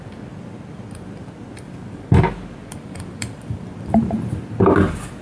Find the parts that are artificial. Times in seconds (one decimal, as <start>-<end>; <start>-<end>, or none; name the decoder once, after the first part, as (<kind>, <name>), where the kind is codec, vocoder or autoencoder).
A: 2.6-3.9 (vocoder, BigVGAN v2)